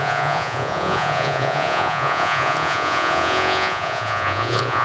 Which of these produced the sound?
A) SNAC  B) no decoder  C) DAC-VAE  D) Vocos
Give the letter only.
D